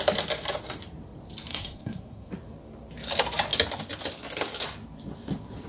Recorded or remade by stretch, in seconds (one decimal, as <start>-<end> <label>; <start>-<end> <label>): 0.0-1.5 recorded; 1.5-2.3 remade; 2.3-5.7 recorded